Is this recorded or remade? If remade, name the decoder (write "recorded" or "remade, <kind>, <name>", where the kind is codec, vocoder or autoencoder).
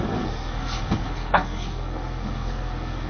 remade, codec, SNAC